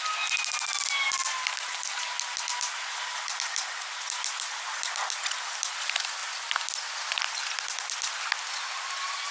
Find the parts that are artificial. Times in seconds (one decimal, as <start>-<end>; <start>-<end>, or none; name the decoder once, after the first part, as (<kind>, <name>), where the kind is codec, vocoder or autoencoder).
none